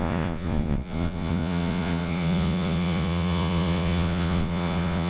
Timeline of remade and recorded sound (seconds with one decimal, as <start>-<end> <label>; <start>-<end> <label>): 0.0-5.1 remade